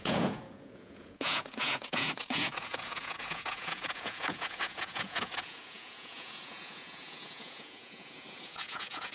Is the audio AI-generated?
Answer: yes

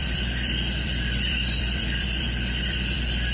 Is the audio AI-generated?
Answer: yes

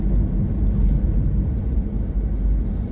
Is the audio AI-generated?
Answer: no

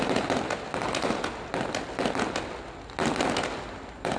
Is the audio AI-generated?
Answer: no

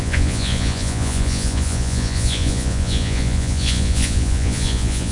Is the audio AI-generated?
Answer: yes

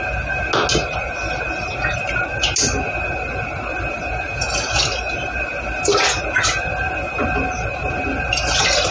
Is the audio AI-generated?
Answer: no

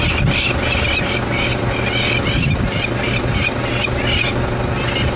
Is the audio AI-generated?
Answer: no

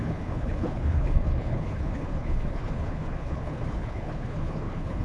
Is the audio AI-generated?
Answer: yes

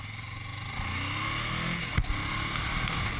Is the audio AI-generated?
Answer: no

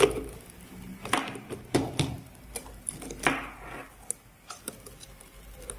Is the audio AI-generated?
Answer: no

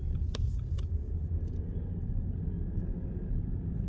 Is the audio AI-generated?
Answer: no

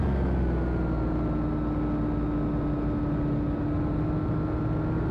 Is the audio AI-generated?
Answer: no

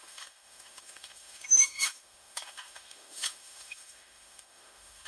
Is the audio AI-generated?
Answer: yes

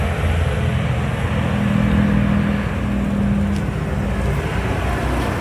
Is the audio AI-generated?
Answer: no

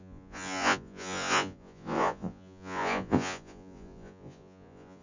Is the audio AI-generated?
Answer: yes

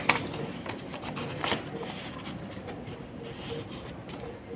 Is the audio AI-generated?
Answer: no